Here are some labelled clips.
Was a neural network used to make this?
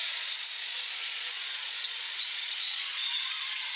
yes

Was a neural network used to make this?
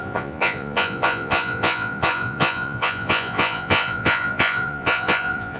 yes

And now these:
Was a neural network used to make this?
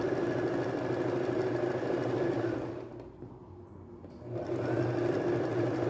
no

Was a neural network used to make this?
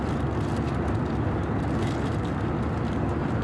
no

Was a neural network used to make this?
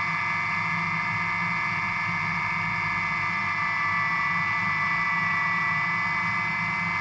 no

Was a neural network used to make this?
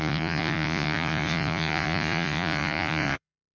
yes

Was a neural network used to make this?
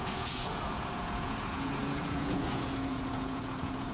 yes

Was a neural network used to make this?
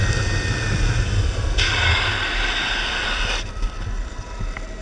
no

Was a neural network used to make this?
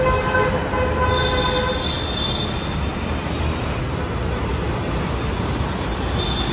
no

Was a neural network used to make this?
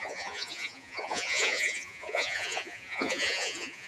yes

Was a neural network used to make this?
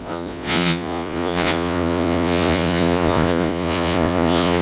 yes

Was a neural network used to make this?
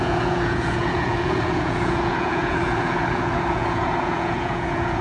yes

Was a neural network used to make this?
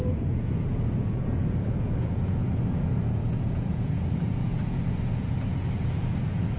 yes